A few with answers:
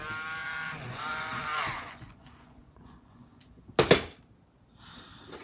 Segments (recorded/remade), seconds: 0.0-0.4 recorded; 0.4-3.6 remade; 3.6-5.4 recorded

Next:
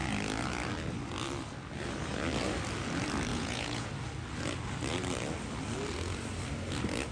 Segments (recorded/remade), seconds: 0.0-3.3 recorded; 3.3-3.9 remade; 3.9-7.1 recorded

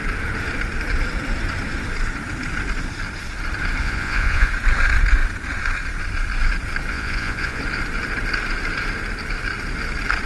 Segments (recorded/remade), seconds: 0.0-3.8 recorded; 3.8-4.5 remade; 4.5-6.9 recorded; 6.9-7.6 remade; 7.6-10.3 recorded

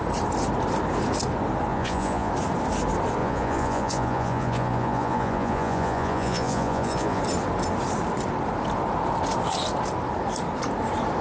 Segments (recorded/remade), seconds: 0.0-1.7 recorded; 1.7-2.3 remade; 2.3-3.2 recorded; 3.2-7.2 remade; 7.2-11.2 recorded